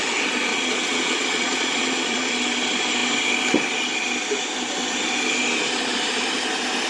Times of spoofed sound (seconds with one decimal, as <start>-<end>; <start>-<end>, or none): 0.5-2.3